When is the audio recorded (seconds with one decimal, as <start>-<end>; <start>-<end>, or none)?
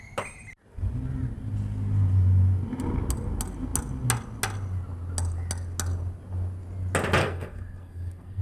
0.0-7.2